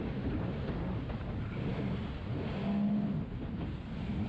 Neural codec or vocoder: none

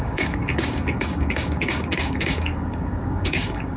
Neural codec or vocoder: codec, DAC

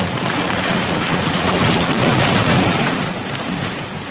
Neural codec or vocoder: vocoder, Vocos